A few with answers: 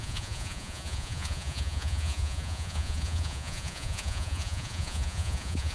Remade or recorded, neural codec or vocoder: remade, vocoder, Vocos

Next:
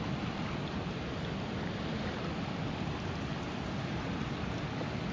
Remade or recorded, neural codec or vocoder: recorded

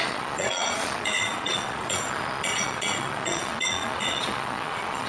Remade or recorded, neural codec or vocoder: remade, vocoder, Vocos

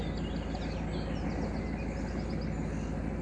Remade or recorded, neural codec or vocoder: recorded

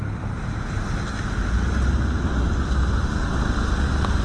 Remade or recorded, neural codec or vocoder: recorded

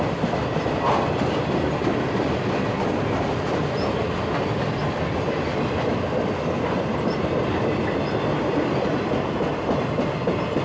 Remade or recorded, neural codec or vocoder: recorded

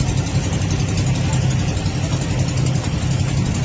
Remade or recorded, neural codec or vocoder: recorded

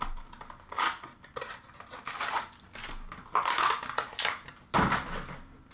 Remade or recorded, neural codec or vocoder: recorded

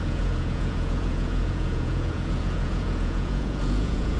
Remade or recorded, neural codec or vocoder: remade, vocoder, Vocos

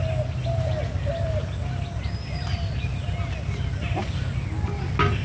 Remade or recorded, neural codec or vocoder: recorded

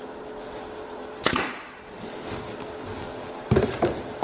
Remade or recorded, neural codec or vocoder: recorded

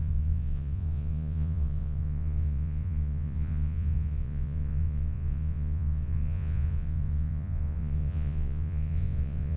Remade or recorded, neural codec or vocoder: remade, vocoder, Vocos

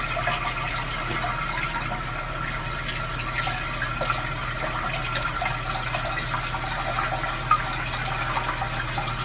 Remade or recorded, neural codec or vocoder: recorded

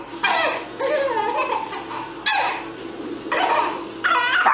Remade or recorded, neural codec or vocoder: recorded